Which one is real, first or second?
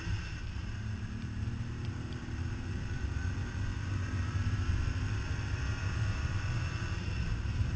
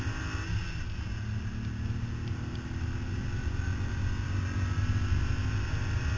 second